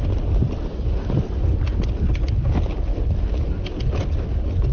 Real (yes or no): yes